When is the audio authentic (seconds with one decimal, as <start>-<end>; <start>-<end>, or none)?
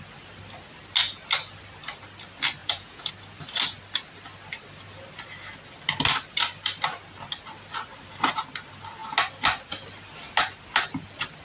0.0-2.6; 3.1-11.4